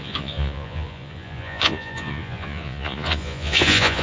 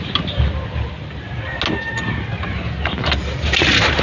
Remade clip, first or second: first